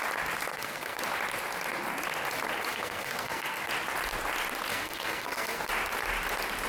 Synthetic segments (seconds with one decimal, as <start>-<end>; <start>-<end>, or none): 0.5-1.0; 2.7-3.7; 4.7-5.7